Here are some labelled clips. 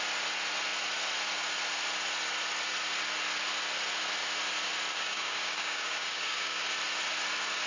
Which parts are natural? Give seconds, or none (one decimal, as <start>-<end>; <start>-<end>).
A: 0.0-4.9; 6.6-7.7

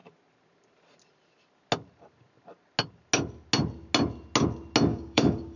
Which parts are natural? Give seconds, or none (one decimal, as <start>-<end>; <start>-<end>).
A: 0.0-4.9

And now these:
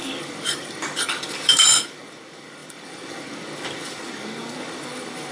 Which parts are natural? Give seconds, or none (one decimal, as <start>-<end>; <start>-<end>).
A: none

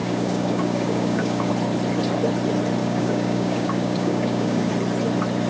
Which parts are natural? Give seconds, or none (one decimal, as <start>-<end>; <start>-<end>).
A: 1.5-2.8; 4.7-5.5

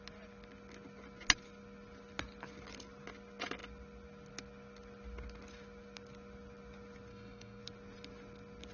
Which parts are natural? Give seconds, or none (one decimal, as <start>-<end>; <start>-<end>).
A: 0.0-7.1; 7.6-8.7

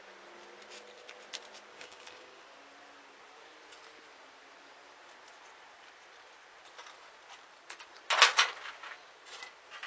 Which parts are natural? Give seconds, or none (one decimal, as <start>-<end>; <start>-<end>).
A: 0.0-1.7; 2.4-9.9

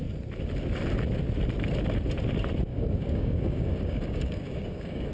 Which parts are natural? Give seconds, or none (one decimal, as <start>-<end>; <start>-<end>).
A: 0.0-2.7

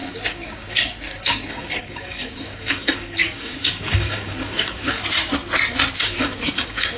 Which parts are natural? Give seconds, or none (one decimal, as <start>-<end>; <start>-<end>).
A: 5.0-6.0